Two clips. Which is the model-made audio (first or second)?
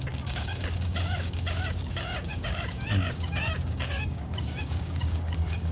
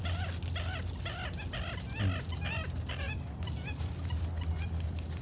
first